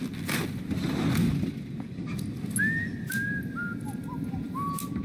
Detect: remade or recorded recorded